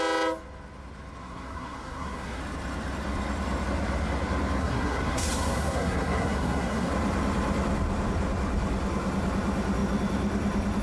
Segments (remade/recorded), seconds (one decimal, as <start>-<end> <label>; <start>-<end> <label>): 0.0-1.2 recorded; 1.2-2.4 remade; 2.4-4.6 recorded; 4.6-6.9 remade; 6.9-10.8 recorded

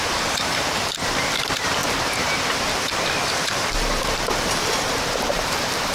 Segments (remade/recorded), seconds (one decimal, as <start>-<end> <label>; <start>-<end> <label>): 0.0-5.9 remade

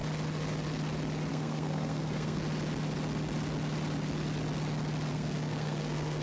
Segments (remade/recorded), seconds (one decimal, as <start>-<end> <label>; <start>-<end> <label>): 0.0-1.3 recorded; 1.3-2.4 remade; 2.4-5.1 recorded; 5.1-6.2 remade